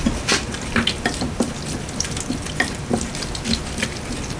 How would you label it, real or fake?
real